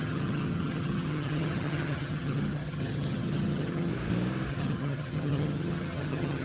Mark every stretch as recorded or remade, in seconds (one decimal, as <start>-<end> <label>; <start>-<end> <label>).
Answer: 0.0-3.9 remade; 3.9-4.5 recorded; 4.5-6.4 remade